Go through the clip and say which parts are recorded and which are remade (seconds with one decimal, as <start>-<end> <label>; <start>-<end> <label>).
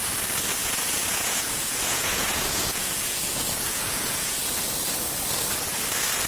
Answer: 0.0-0.6 recorded; 0.6-4.4 remade; 4.4-6.3 recorded